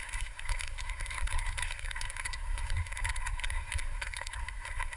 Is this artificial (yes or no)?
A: yes